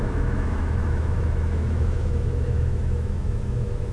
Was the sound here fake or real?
fake